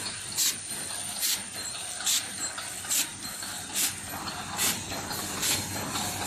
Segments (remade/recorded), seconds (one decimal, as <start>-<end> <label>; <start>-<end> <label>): 0.0-6.3 recorded